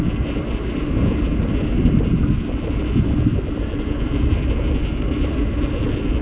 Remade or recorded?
recorded